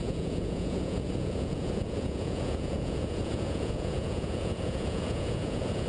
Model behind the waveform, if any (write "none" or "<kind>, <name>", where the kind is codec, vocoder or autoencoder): vocoder, Vocos